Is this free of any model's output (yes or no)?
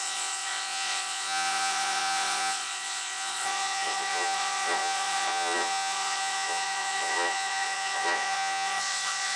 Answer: no